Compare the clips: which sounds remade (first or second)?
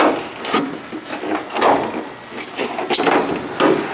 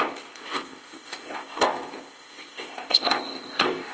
second